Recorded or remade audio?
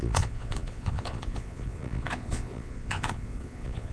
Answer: remade